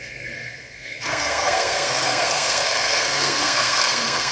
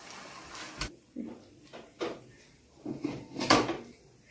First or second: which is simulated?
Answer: first